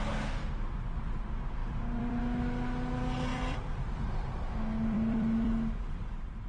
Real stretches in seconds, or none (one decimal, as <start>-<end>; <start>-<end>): 0.0-1.6; 2.2-3.3; 6.0-6.5